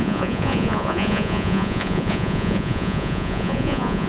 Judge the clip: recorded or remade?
remade